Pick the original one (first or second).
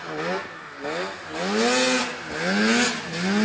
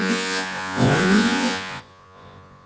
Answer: first